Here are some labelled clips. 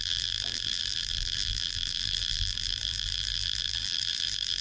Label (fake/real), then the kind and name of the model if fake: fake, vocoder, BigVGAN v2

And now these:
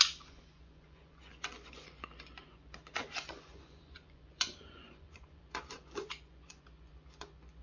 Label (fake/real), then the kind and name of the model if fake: fake, vocoder, Vocos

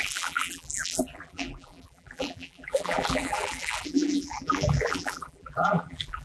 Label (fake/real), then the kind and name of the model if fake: fake, vocoder, BigVGAN v2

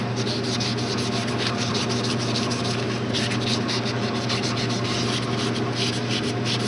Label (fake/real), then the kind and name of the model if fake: real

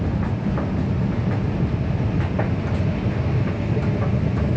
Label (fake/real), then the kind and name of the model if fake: real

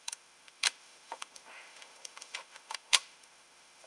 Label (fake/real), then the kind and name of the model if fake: fake, autoencoder, DAC-VAE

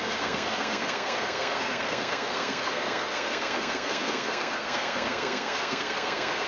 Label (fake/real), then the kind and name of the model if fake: fake, codec, SNAC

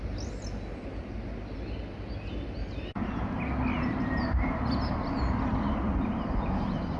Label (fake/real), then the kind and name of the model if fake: real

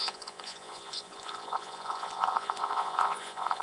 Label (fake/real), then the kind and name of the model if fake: fake, vocoder, Vocos